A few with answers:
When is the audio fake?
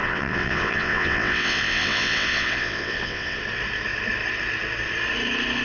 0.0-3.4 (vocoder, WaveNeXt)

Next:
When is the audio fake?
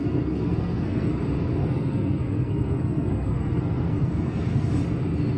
0.0-1.2 (codec, SNAC); 1.6-4.8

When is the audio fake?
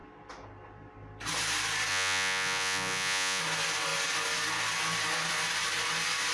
1.9-3.4 (vocoder, Vocos)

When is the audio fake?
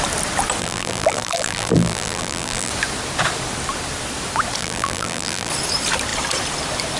0.6-2.7 (vocoder, BigVGAN v2); 4.6-5.5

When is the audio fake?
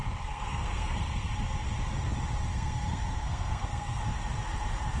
0.0-1.3 (codec, SNAC); 2.5-4.0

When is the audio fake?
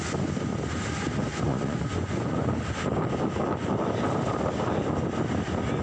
1.3-2.5 (vocoder, Vocos)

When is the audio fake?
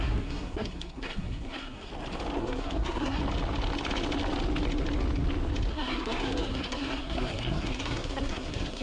0.0-1.9 (codec, SNAC); 2.4-3.2; 5.7-8.8